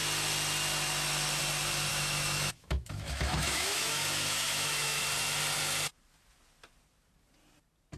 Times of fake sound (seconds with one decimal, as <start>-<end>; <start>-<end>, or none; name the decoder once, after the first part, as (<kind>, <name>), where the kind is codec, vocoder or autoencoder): 1.9-5.0 (autoencoder, DAC-VAE)